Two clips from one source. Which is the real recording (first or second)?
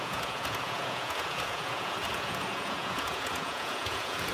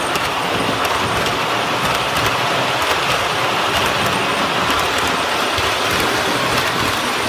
second